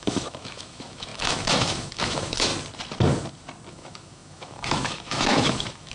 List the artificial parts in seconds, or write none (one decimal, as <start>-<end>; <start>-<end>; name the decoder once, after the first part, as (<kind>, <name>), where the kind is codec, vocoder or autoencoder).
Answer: 0.0-2.5 (autoencoder, DAC-VAE); 3.7-5.9